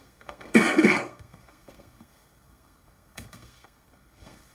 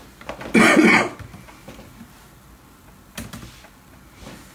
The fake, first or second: first